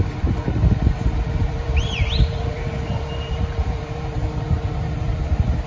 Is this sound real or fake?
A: fake